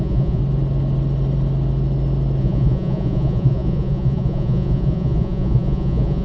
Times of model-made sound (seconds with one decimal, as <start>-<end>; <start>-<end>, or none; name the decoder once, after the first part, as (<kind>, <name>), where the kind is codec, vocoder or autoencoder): 0.0-0.4 (vocoder, Vocos); 2.4-6.2

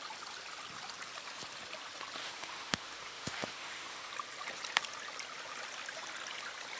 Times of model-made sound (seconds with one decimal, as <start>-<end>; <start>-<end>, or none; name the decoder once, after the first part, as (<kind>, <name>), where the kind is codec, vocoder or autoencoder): 2.2-4.1 (autoencoder, DAC-VAE)

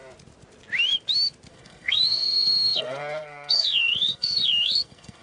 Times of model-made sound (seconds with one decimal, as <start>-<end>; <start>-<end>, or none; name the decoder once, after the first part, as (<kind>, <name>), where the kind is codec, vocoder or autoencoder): 1.5-5.2 (codec, SNAC)

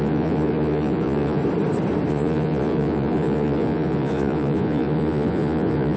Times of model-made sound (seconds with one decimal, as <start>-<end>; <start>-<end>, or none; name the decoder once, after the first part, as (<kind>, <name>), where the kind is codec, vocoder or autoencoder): 0.0-1.4 (vocoder, Vocos); 2.1-6.0